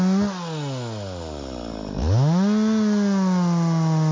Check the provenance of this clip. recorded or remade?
recorded